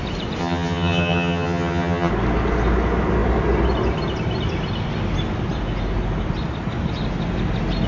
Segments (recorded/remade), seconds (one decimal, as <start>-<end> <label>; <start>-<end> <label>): 0.0-0.4 recorded; 0.4-2.1 remade; 2.1-7.9 recorded